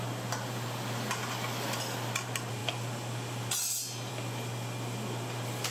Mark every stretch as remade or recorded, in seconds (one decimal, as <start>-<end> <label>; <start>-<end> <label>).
0.0-5.7 recorded